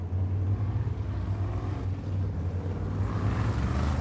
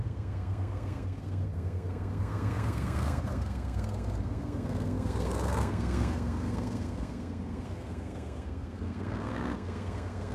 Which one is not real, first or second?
second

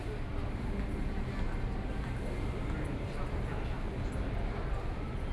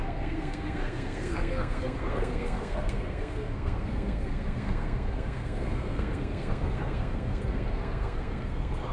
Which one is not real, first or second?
second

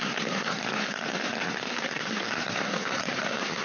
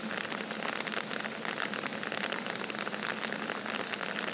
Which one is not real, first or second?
first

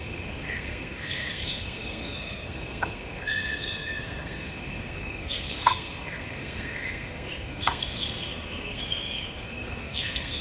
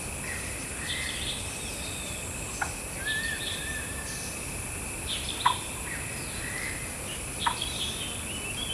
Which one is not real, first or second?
first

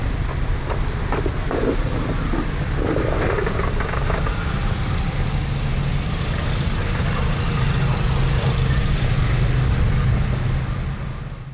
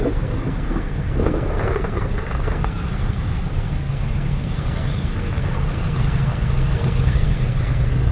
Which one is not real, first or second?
second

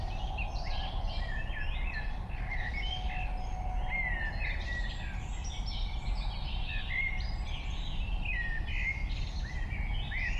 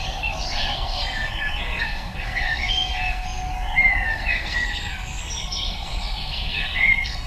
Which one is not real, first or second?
second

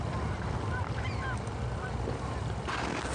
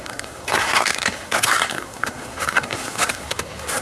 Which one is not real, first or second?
second